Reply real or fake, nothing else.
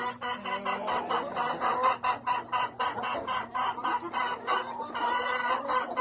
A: real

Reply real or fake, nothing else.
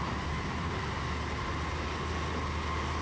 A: real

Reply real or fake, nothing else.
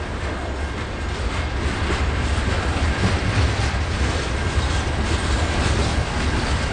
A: real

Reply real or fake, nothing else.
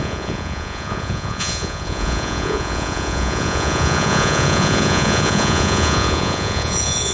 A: fake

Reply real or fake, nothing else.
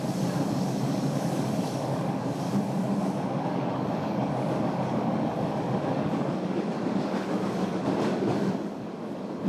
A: fake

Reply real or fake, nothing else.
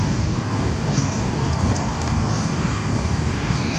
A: fake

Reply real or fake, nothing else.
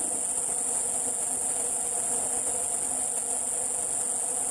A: real